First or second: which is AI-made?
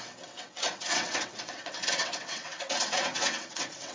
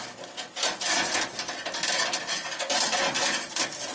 first